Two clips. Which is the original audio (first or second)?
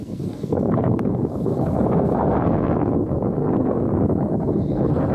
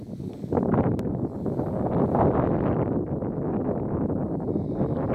second